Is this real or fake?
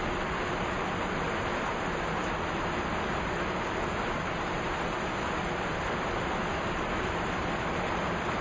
real